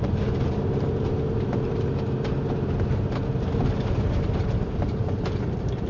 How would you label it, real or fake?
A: fake